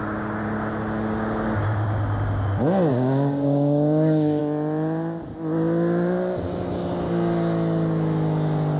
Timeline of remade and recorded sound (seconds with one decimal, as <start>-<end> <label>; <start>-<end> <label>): 0.0-2.9 recorded; 2.9-4.4 remade; 4.4-8.8 recorded